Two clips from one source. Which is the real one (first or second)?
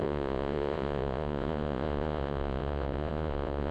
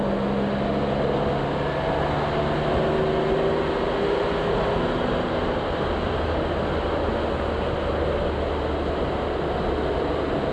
second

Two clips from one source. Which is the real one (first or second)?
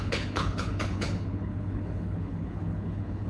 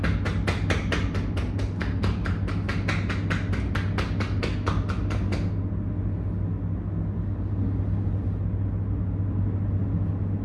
second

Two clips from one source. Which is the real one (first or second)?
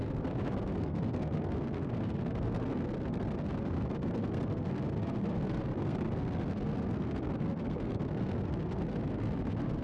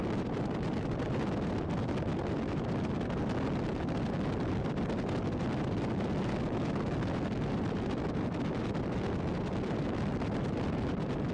second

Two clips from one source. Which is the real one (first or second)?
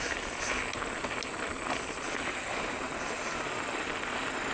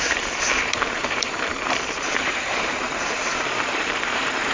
first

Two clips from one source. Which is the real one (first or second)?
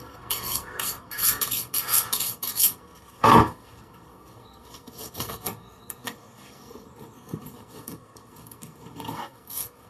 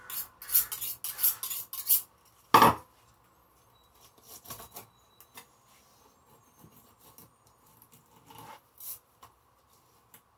second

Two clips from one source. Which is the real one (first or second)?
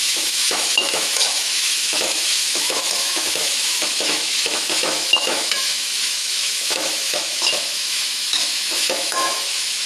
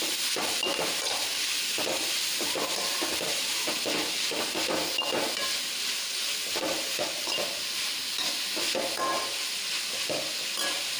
second